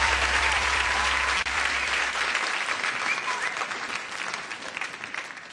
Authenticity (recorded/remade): remade